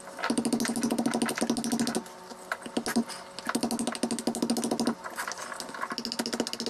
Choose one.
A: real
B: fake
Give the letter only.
A